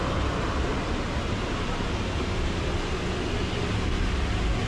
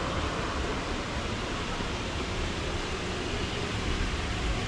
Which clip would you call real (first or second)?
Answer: first